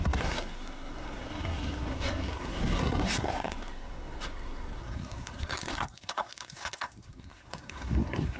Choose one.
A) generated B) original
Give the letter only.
A